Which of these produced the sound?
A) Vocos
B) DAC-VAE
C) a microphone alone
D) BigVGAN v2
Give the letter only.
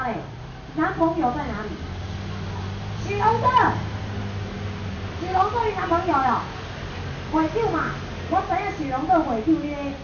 C